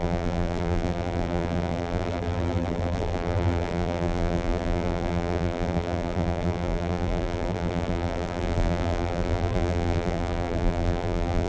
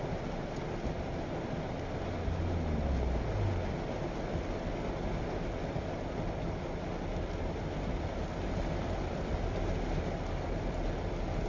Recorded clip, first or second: second